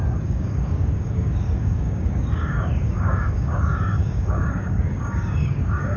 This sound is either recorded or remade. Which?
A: remade